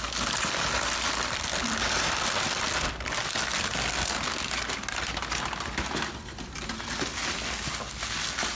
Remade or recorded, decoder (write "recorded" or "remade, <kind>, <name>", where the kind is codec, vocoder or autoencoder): recorded